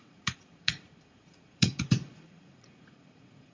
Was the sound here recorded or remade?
remade